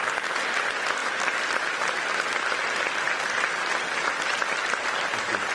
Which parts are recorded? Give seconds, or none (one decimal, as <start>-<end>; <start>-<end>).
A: 0.0-5.5